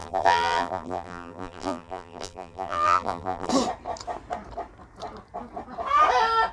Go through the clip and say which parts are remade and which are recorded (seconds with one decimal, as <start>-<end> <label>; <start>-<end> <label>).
0.0-3.5 remade; 3.5-6.5 recorded